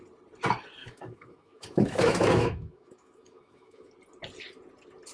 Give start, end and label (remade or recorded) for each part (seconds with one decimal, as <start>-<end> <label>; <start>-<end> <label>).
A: 0.0-0.8 recorded; 0.8-3.9 remade; 3.9-5.1 recorded